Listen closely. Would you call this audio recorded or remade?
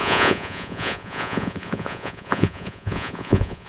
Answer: remade